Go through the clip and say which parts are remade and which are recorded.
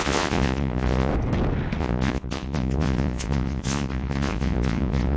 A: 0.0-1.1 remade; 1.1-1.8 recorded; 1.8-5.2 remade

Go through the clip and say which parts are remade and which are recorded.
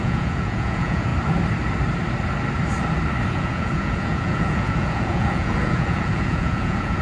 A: 0.0-1.1 remade; 1.1-3.3 recorded; 3.3-7.0 remade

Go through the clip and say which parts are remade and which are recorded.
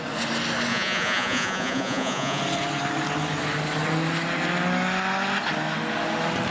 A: 0.0-0.7 recorded; 0.7-2.4 remade; 2.4-6.5 recorded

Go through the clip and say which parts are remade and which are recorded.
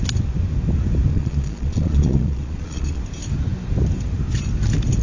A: 0.0-1.1 recorded; 1.1-3.0 remade; 3.0-5.0 recorded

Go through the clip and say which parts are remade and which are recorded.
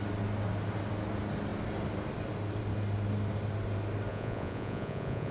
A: 0.0-4.1 recorded; 4.1-5.3 remade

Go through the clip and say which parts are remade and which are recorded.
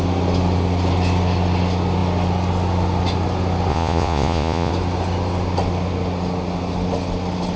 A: 0.0-3.7 recorded; 3.7-4.7 remade; 4.7-7.6 recorded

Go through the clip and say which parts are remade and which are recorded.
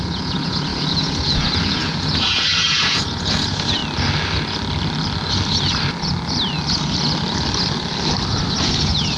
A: 0.0-3.8 remade; 3.8-8.6 recorded; 8.6-9.2 remade